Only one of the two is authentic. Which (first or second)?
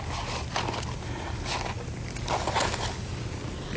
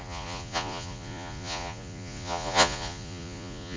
first